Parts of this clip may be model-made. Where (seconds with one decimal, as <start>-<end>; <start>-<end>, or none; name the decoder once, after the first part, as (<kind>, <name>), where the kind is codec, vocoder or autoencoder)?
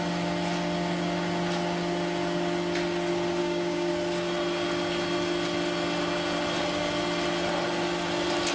3.4-3.9 (codec, DAC)